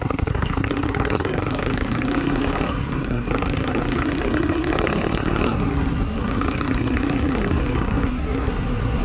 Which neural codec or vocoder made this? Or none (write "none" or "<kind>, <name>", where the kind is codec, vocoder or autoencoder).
codec, SNAC